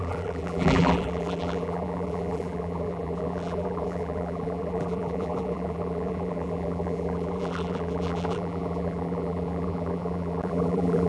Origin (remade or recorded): remade